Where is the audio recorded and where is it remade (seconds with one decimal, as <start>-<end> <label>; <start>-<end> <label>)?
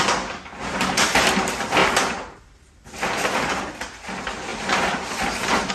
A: 0.0-1.8 recorded; 1.8-2.7 remade; 2.7-4.5 recorded; 4.5-5.7 remade